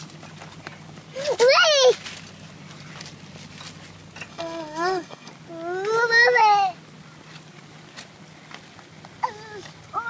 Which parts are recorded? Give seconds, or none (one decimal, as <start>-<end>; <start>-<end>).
0.0-4.3; 5.3-10.1

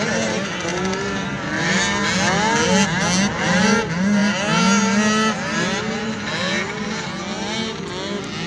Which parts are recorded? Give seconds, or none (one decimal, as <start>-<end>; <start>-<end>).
0.0-8.5

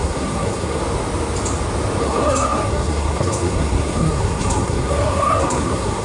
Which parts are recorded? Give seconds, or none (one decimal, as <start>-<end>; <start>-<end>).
0.8-2.0

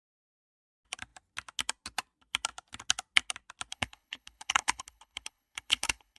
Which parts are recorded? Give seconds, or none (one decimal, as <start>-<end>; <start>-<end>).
0.0-3.7

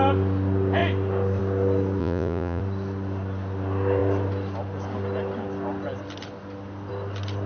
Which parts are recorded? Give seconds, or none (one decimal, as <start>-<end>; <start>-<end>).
0.0-2.0; 2.6-7.5

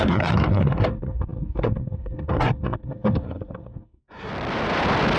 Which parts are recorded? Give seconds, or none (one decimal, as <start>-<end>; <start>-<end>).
4.3-5.2

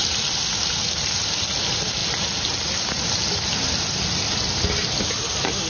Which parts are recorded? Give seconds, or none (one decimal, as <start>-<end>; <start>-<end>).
0.0-5.7

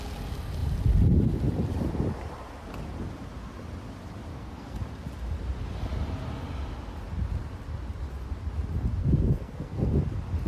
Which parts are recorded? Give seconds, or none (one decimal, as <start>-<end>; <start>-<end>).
0.0-4.3; 4.8-9.0; 10.0-10.5